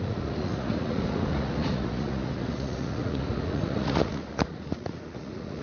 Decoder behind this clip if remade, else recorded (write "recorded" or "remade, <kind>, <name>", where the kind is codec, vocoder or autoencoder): remade, vocoder, Vocos